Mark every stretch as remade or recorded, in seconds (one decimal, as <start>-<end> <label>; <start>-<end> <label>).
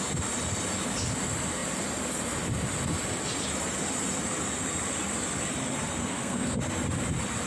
0.0-6.0 recorded; 6.0-6.6 remade; 6.6-7.5 recorded